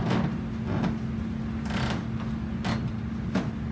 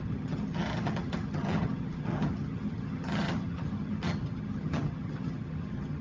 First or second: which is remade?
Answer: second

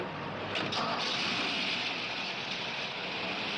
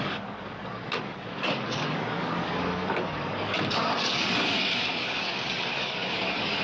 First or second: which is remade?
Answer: second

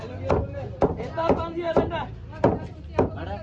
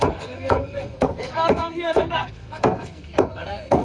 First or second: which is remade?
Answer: second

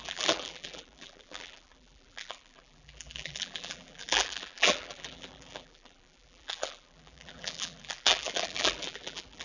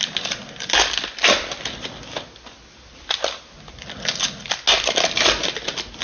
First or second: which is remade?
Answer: first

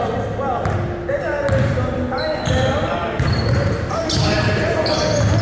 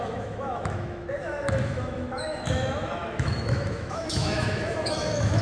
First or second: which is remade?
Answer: second